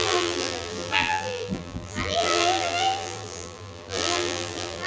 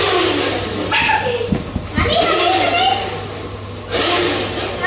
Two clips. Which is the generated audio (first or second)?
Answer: first